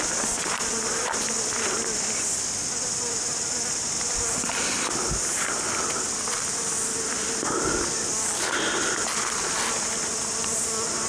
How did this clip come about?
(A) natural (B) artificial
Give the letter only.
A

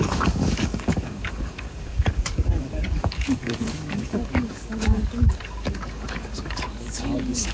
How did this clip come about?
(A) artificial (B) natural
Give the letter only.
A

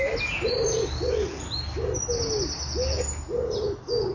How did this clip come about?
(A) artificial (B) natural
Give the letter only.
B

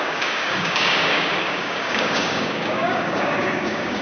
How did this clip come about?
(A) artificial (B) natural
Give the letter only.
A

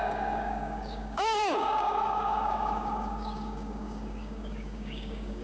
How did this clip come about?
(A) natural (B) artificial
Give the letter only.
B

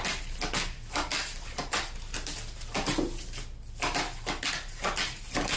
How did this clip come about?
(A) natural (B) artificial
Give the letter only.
A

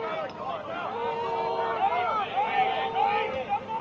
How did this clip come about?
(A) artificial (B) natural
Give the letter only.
B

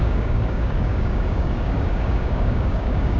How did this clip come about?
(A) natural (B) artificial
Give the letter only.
B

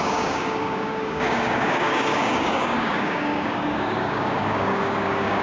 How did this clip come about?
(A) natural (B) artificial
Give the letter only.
B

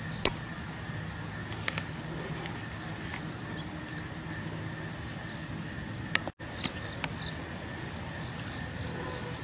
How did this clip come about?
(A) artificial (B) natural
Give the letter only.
B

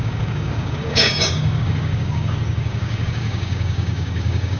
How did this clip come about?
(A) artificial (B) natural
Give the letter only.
A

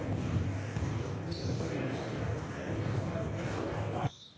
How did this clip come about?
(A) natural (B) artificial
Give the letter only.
B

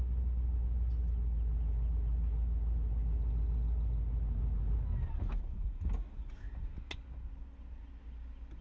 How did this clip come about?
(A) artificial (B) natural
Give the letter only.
B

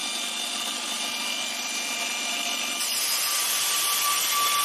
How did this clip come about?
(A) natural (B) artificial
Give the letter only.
A